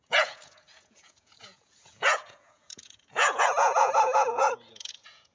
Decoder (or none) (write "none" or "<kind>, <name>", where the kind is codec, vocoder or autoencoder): vocoder, Vocos